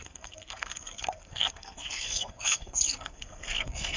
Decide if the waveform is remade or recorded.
remade